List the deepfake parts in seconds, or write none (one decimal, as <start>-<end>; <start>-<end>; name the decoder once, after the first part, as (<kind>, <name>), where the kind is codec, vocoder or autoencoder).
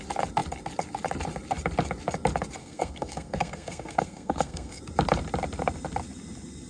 2.6-4.8 (codec, SNAC)